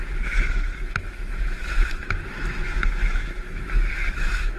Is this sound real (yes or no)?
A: no